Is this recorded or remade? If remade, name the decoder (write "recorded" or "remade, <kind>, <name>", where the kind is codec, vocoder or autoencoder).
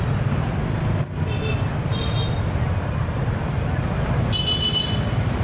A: recorded